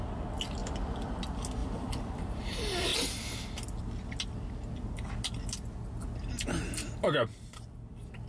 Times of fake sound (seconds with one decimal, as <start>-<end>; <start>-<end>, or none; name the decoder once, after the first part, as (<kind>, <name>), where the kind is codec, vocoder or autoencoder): 0.6-1.2 (vocoder, BigVGAN v2); 1.6-2.4